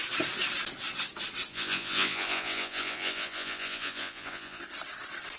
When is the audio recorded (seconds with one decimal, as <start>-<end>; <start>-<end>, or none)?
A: 0.0-1.5; 4.6-5.4